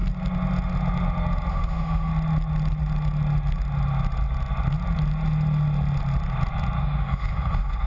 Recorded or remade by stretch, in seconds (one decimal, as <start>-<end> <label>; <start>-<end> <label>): 0.0-1.5 recorded; 1.5-2.1 remade; 2.1-6.8 recorded; 6.8-7.9 remade